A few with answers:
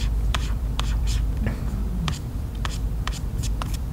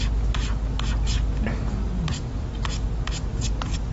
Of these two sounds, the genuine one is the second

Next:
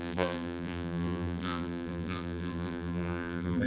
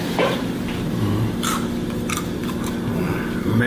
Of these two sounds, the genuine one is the second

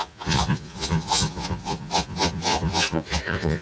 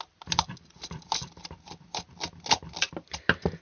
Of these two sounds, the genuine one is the second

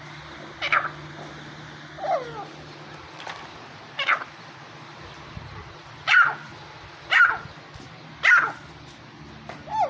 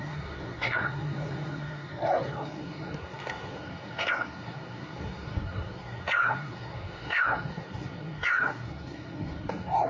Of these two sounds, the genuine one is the first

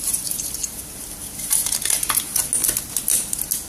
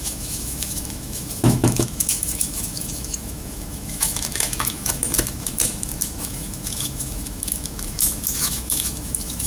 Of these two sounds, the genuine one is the first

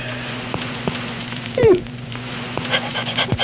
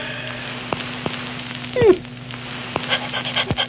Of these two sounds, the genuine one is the second